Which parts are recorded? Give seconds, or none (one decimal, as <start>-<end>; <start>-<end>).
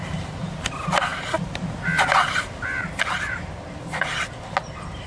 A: 0.0-5.1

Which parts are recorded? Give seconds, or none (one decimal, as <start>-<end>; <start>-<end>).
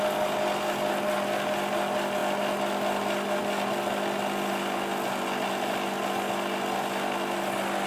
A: 0.0-7.9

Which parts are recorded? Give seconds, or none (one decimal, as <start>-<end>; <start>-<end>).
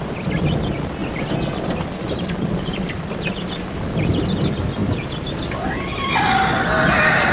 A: 0.0-1.0; 3.3-4.8; 5.5-7.3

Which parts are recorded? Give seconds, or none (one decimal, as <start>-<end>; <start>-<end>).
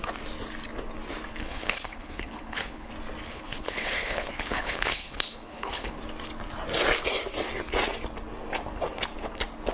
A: 0.0-1.4; 2.9-3.3; 6.0-9.7